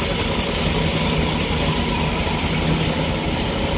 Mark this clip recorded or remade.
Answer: recorded